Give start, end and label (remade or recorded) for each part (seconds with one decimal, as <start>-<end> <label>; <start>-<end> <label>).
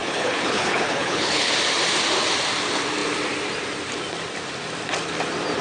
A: 0.0-1.5 remade; 1.5-5.6 recorded